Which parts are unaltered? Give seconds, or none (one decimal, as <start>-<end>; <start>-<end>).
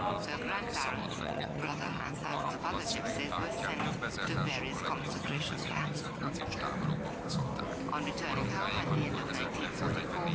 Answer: 0.0-1.0; 2.5-5.0; 6.3-10.3